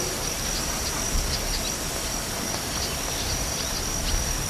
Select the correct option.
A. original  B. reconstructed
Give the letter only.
A